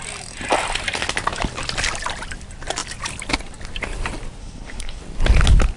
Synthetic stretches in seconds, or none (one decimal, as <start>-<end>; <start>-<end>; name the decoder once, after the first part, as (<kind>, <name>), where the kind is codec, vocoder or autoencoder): 4.4-5.0 (codec, HILCodec)

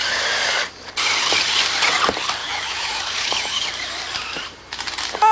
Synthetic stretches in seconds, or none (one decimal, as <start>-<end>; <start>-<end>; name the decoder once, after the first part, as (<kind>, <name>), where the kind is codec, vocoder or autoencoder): 2.4-3.7 (autoencoder, DAC-VAE)

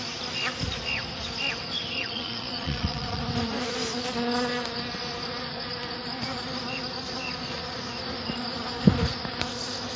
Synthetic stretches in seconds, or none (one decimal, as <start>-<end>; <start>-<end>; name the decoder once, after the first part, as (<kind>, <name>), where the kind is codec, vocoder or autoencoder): 2.0-3.2 (vocoder, Vocos)

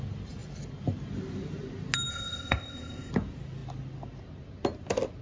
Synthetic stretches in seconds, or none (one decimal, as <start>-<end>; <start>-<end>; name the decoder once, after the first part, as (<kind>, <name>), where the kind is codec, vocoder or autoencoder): 2.1-3.1 (codec, ZipCodec)

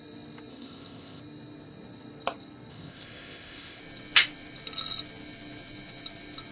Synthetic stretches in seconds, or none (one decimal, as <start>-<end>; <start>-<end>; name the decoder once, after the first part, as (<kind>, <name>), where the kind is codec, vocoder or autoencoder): 0.5-1.2 (codec, ZipCodec); 2.7-3.8

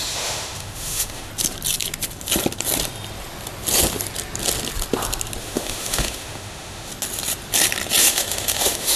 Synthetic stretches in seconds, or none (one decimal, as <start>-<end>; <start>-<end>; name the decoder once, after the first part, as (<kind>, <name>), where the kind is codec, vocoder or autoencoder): 0.0-1.3 (autoencoder, DAC-VAE); 5.4-6.9; 8.0-9.0

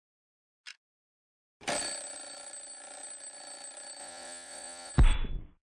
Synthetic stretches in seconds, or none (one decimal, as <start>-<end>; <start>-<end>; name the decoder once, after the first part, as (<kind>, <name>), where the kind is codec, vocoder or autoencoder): 4.0-4.9 (vocoder, Vocos)